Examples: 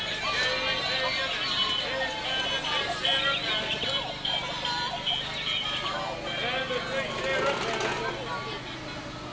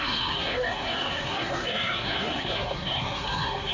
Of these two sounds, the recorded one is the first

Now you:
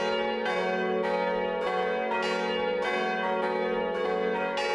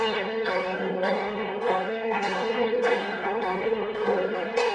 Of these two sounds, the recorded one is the first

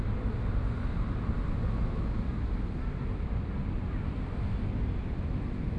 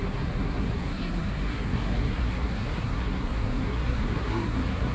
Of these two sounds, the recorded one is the first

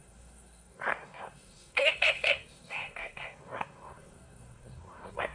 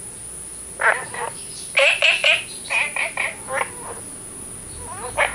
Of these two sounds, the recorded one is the second